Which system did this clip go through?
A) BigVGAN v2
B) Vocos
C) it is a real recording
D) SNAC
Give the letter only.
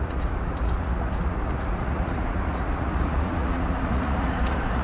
B